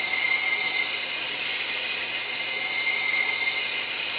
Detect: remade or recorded recorded